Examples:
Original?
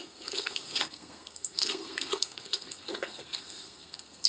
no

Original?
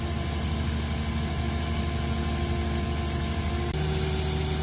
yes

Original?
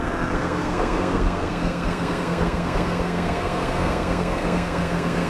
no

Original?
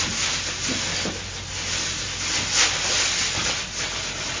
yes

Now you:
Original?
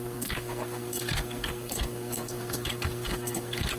no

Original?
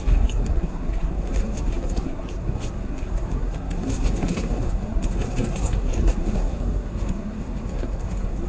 no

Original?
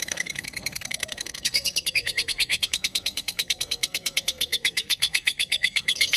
no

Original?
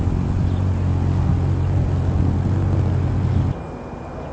yes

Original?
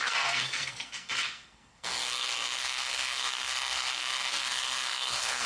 no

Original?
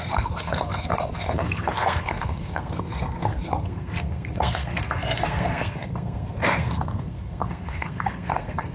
no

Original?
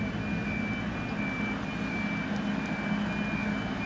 yes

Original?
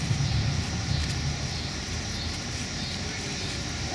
yes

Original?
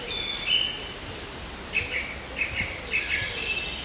yes